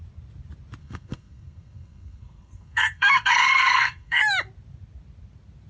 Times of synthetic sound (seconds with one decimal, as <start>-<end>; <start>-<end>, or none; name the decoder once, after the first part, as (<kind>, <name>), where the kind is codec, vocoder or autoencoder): 0.8-4.2 (codec, SNAC)